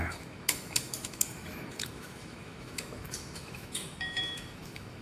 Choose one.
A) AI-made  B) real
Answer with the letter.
A